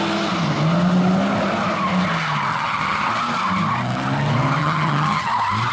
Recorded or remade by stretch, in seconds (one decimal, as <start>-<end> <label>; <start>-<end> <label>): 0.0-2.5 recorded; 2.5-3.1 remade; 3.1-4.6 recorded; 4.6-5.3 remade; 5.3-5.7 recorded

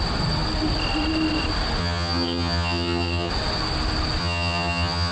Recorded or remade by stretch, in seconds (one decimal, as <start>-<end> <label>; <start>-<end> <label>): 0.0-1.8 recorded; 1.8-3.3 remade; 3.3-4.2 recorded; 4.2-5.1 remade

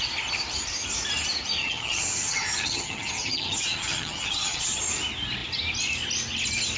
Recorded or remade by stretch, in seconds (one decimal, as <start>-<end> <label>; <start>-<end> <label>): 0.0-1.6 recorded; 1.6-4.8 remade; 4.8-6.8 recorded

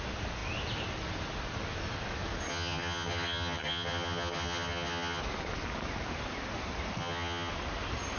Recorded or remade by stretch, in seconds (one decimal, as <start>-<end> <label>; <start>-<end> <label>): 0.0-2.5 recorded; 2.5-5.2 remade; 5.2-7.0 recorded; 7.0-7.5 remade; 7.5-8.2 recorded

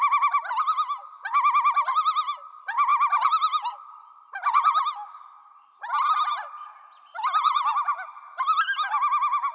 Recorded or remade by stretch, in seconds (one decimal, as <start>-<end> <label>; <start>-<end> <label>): 0.0-9.5 recorded

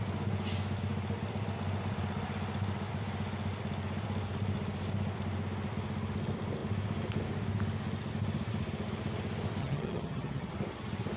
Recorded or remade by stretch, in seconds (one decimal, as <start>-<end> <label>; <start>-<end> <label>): 0.0-9.6 recorded; 9.6-10.5 remade; 10.5-11.2 recorded

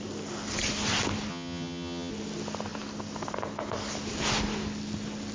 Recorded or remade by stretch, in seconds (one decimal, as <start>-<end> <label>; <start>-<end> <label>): 0.0-1.3 recorded; 1.3-2.1 remade; 2.1-5.3 recorded